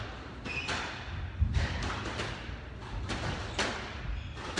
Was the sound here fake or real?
real